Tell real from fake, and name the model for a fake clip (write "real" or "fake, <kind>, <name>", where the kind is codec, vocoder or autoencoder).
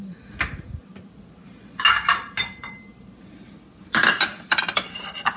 real